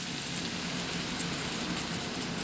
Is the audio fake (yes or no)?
no